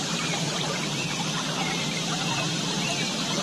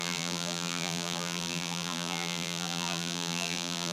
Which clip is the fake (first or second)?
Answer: second